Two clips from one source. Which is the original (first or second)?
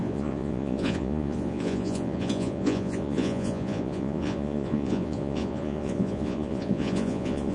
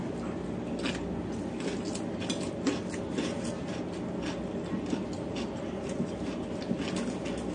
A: second